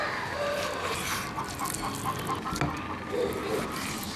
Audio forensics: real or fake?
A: real